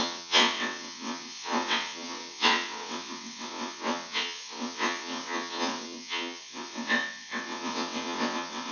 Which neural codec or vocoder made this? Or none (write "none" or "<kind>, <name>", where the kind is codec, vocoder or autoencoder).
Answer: vocoder, WaveNeXt